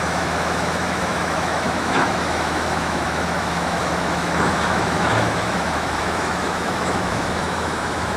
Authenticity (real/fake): fake